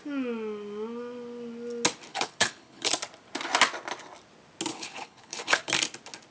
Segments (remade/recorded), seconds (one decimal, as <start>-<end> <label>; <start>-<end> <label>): 0.0-2.1 recorded; 2.1-2.9 remade; 2.9-4.7 recorded; 4.7-5.7 remade; 5.7-6.3 recorded